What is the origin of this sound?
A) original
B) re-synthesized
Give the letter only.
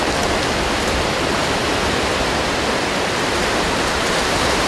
A